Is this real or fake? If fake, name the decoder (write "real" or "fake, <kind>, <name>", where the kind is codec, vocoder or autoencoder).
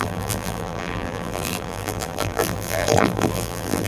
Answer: fake, vocoder, BigVGAN v2